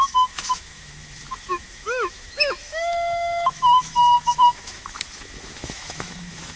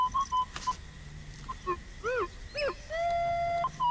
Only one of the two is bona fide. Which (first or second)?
second